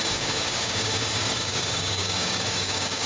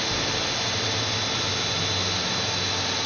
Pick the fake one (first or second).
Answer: first